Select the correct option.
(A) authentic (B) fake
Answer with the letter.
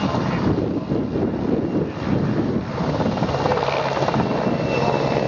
A